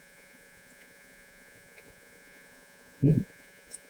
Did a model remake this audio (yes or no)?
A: yes